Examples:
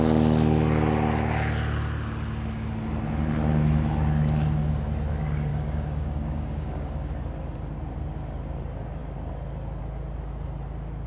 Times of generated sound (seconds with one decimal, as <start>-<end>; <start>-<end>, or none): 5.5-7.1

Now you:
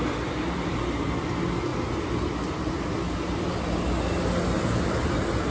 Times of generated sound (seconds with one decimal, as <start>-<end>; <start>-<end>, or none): none

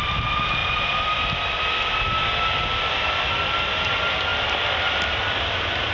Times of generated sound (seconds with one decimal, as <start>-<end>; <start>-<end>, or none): none

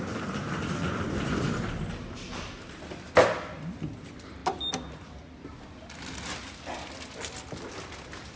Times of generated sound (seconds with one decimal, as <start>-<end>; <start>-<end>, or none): none

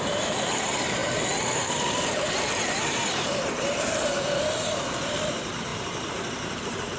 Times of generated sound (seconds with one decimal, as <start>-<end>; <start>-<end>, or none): 0.0-7.0